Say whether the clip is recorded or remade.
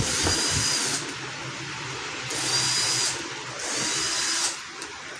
recorded